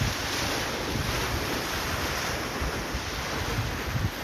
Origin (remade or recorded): recorded